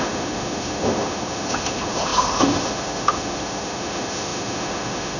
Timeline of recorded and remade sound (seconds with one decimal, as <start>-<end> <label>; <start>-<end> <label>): 0.0-5.2 remade